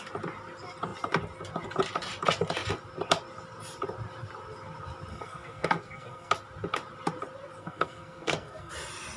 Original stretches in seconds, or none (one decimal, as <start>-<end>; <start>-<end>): 0.0-5.1; 6.3-7.6; 8.7-9.2